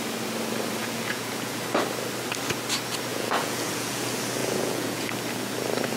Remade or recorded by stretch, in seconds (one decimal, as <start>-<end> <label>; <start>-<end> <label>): 0.0-0.8 recorded; 0.8-1.6 remade; 1.6-3.1 recorded; 3.1-4.0 remade; 4.0-4.4 recorded; 4.4-5.1 remade; 5.1-6.0 recorded